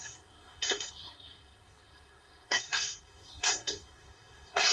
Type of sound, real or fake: fake